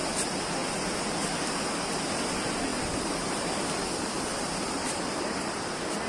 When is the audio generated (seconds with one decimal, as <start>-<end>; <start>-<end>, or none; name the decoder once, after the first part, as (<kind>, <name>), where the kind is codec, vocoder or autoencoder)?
none